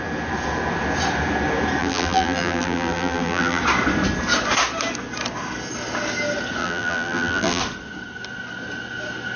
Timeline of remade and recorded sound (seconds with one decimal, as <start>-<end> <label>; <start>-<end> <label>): 0.0-1.8 recorded; 1.8-3.6 remade; 3.6-6.6 recorded; 6.6-7.6 remade; 7.6-9.4 recorded